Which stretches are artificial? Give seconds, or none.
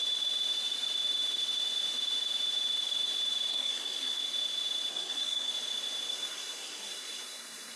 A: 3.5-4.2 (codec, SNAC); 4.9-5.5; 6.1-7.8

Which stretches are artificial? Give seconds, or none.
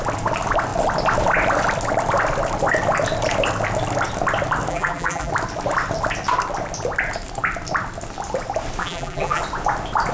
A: 4.7-5.3 (vocoder, BigVGAN v2); 8.8-9.4